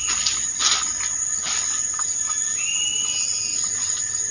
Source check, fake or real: real